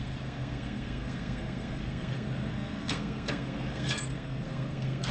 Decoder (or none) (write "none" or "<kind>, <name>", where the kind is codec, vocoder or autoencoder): codec, SNAC